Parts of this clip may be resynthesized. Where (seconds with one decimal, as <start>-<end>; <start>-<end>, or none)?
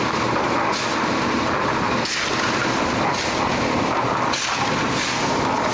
none